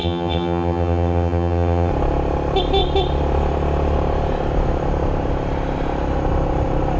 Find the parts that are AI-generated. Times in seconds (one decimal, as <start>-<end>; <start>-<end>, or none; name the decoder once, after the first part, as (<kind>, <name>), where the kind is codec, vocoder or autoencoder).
0.0-1.9 (vocoder, HiFi-GAN)